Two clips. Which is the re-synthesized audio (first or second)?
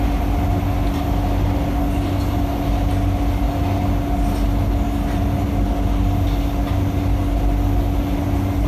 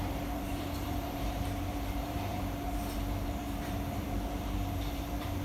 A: second